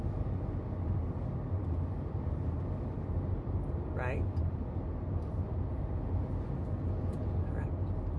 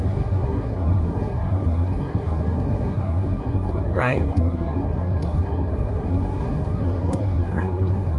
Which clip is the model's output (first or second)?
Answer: second